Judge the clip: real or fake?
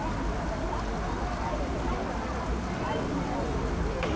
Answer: real